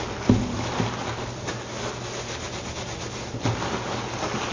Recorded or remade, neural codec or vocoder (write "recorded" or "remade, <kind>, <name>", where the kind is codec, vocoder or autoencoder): recorded